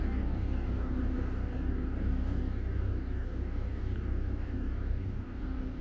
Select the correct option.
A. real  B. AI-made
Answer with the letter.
B